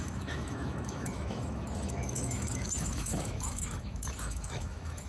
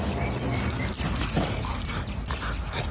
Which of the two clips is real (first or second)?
second